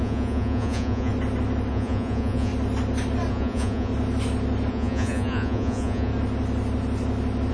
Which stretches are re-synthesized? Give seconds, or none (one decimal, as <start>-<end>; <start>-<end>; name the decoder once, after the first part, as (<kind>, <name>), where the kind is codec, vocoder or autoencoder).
0.0-1.1 (vocoder, Vocos); 1.7-2.5; 3.3-3.9; 4.7-6.1